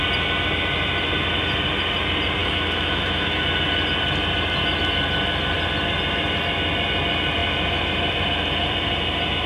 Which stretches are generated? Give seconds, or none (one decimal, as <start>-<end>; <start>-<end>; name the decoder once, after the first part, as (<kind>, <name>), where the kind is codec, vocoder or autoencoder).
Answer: 2.4-3.4 (autoencoder, DAC-VAE)